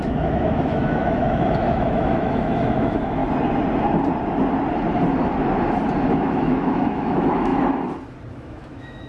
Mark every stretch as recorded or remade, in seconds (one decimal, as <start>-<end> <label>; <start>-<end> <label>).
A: 0.0-3.2 remade; 3.2-6.1 recorded; 6.1-7.5 remade; 7.5-8.3 recorded; 8.3-9.1 remade